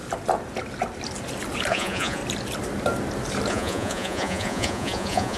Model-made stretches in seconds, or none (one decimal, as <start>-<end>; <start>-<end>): 1.7-2.2; 3.5-5.4